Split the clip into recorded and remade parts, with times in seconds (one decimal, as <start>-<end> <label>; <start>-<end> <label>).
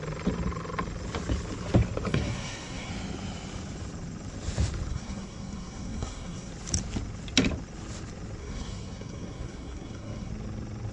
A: 0.0-2.1 recorded; 2.1-2.9 remade; 2.9-4.9 recorded; 4.9-6.5 remade; 6.5-8.4 recorded; 8.4-10.3 remade; 10.3-10.9 recorded